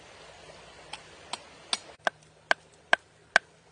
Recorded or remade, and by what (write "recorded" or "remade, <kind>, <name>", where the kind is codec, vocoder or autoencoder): recorded